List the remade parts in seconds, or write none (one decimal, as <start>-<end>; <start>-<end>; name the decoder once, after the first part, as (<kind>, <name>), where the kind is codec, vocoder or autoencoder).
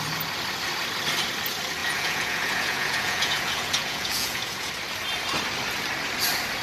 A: 1.8-4.7 (vocoder, Vocos)